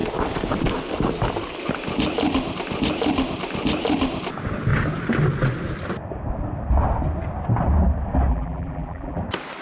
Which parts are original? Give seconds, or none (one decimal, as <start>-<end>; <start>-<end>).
0.0-8.3; 9.2-9.6